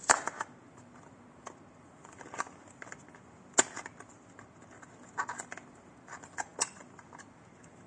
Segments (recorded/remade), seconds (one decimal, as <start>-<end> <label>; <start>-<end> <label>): 0.0-7.9 recorded